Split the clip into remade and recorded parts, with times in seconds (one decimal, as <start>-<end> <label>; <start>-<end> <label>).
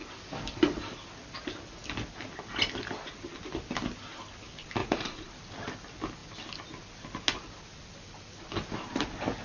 0.0-4.8 recorded; 4.8-5.3 remade; 5.3-9.4 recorded